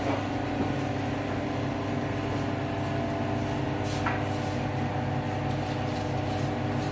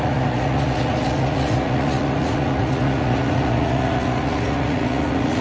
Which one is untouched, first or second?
first